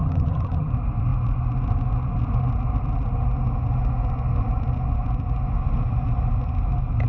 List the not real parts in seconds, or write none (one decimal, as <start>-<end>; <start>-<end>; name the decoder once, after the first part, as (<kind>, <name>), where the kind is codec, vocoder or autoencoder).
0.0-0.7 (vocoder, HiFi-GAN)